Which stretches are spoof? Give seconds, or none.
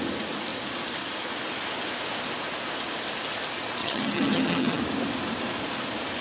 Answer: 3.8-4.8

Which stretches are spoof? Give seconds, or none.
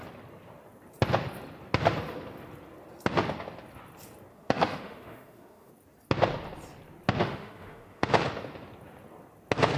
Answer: 4.3-5.7; 7.2-8.1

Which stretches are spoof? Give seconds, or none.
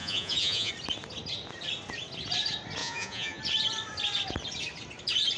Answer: 0.0-0.7; 2.8-3.4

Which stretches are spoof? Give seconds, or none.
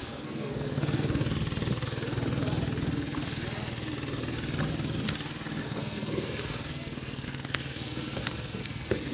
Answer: 0.0-1.2; 5.6-9.1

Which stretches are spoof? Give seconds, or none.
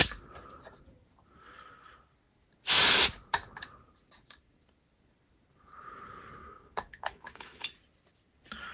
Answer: 6.4-7.6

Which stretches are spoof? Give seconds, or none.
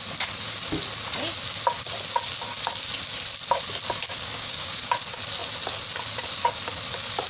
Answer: 4.0-4.8